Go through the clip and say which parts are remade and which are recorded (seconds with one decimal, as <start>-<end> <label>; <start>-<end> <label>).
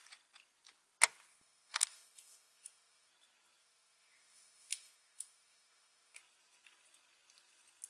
0.0-1.3 recorded; 1.3-3.1 remade; 3.1-3.6 recorded; 3.6-6.2 remade; 6.2-7.9 recorded